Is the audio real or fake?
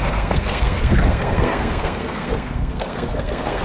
fake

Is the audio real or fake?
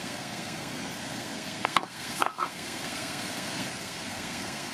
fake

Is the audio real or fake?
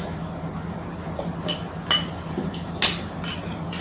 real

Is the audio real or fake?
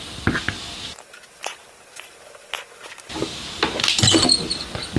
real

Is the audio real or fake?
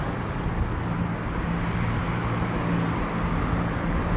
real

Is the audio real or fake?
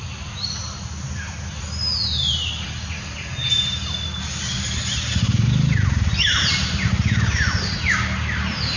real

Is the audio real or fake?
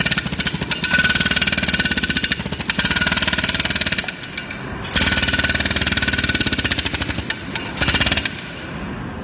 real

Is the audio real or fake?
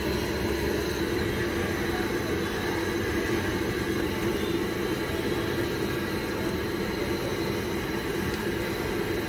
real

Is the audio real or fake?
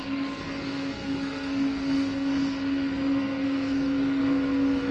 fake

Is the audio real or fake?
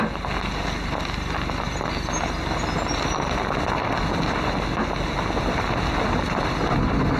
real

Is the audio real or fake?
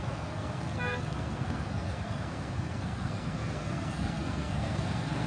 fake